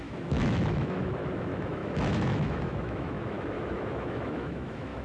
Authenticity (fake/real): fake